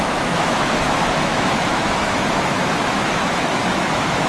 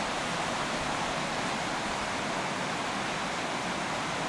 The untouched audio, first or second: second